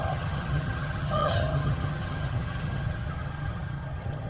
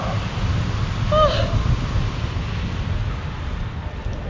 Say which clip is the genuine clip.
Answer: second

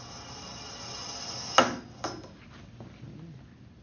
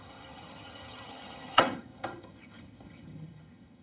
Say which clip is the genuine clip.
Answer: first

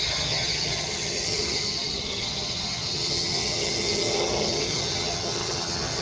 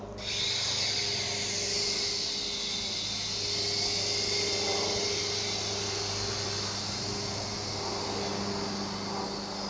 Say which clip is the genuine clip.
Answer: second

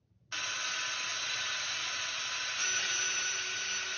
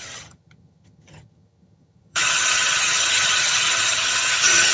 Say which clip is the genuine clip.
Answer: first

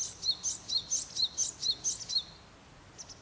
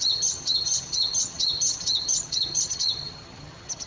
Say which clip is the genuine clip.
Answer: first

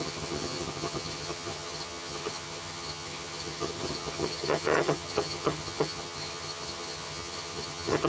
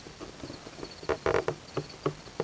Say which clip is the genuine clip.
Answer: second